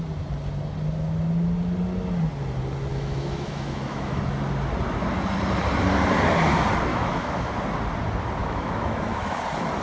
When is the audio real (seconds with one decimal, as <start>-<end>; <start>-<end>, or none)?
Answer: 0.0-2.9; 4.2-6.9; 7.5-8.4; 9.4-9.8